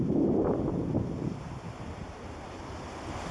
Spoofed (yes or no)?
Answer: yes